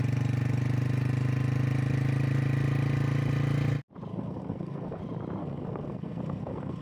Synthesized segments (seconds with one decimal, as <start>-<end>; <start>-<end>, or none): 4.1-5.0; 5.4-6.8